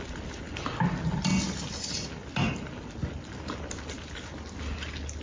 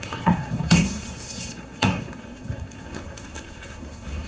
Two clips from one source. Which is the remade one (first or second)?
second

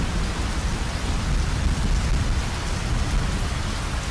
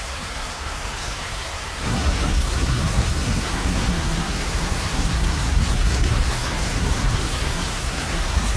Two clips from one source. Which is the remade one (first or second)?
second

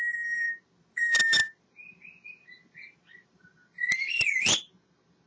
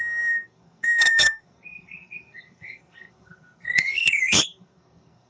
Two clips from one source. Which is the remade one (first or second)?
second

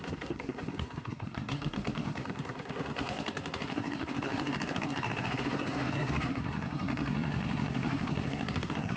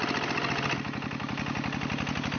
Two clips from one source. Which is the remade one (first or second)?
first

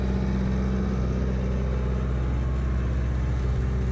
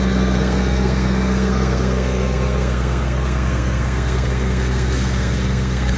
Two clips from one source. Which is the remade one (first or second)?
second